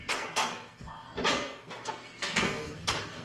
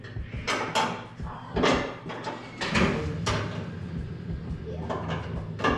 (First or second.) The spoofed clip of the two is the first